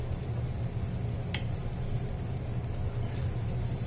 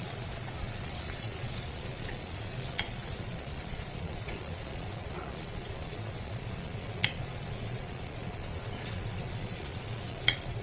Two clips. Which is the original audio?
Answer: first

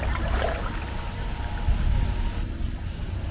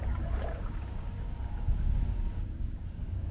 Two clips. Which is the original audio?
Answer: first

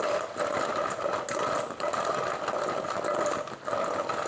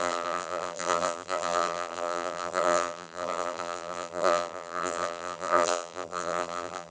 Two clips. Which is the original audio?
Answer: first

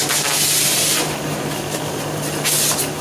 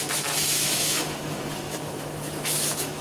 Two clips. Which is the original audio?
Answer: first